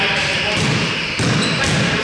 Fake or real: real